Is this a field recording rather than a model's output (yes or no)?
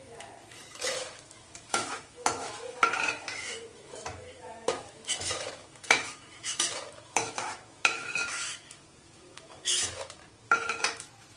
no